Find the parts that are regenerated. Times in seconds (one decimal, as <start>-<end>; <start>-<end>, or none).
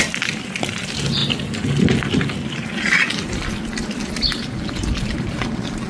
none